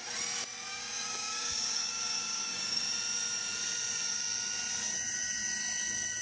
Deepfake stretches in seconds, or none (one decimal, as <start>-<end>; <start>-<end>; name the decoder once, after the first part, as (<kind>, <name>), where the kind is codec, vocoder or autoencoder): 0.7-2.8 (codec, DAC)